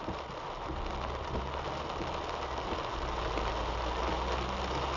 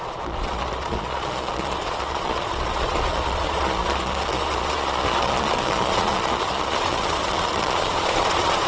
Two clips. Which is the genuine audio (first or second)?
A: first